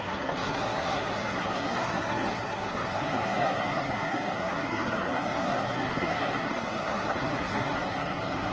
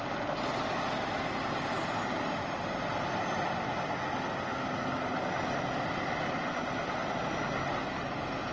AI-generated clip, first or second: first